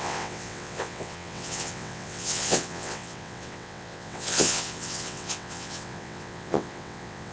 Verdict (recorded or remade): remade